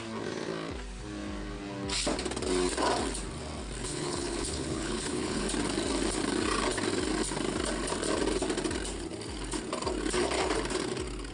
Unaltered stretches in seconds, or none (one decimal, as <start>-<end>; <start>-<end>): 0.0-3.8; 5.4-11.3